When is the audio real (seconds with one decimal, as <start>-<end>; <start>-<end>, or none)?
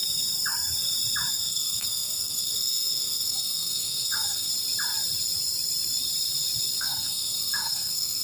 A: 0.0-1.3; 4.5-6.8